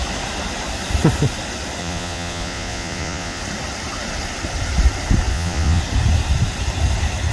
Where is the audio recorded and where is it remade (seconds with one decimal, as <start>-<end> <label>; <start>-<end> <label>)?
0.0-1.8 recorded; 1.8-3.4 remade; 3.4-5.3 recorded; 5.3-5.8 remade; 5.8-7.3 recorded